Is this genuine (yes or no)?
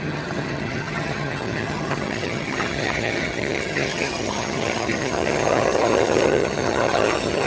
no